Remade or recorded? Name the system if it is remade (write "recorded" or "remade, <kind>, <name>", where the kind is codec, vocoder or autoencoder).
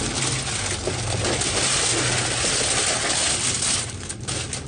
recorded